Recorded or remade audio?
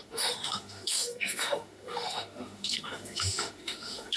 remade